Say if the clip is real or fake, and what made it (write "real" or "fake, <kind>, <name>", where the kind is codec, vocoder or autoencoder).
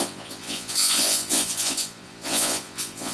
fake, vocoder, Vocos